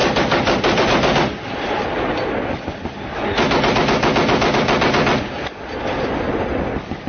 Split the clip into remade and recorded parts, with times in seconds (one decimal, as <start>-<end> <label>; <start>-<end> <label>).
0.0-3.1 remade; 3.1-7.1 recorded